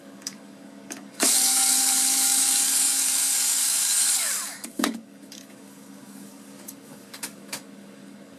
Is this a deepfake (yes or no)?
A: yes